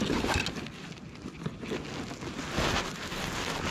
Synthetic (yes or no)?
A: no